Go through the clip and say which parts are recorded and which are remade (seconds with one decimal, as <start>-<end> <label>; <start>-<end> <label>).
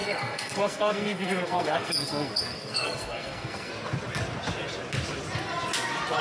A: 0.0-3.7 remade; 3.7-6.2 recorded